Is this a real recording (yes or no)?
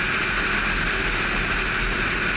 yes